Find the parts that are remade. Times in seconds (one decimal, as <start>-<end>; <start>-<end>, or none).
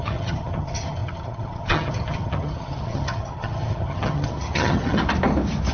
0.0-5.0